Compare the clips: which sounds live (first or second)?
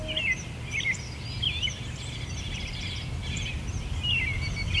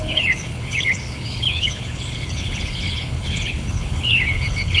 first